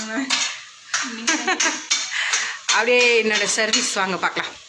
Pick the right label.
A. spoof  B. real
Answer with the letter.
B